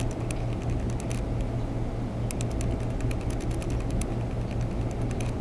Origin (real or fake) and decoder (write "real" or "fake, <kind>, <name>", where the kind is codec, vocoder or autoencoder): real